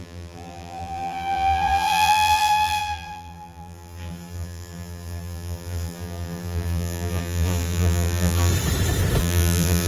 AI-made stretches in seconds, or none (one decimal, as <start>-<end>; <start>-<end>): 0.0-8.5; 9.2-9.9